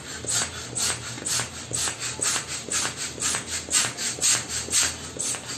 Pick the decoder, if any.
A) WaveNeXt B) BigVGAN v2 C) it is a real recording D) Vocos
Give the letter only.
C